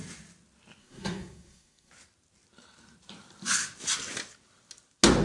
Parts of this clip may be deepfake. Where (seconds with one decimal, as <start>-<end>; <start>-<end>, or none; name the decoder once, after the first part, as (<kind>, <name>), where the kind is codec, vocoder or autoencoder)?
0.8-1.9 (codec, SNAC)